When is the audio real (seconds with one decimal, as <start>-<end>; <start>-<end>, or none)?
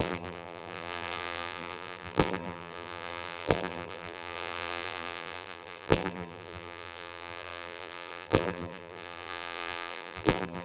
none